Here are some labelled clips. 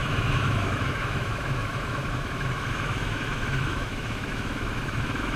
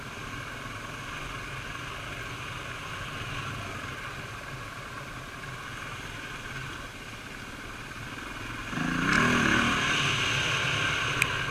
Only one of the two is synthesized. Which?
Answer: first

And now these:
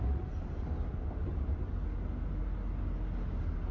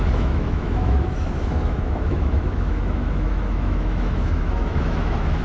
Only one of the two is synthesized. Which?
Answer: second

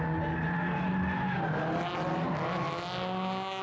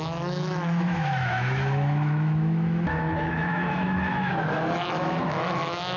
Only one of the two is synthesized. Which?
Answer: second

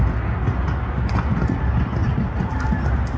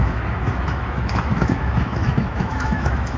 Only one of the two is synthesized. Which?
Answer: second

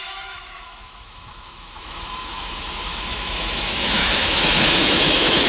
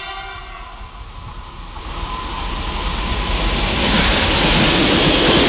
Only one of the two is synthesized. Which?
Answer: first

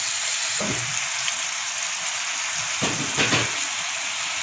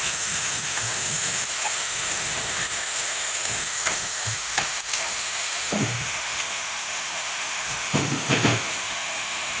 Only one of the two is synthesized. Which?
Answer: second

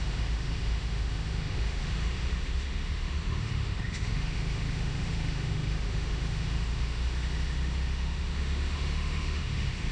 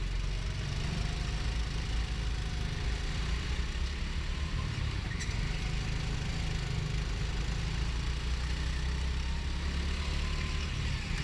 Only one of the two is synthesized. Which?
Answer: first